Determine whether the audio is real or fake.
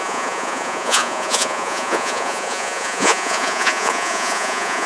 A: fake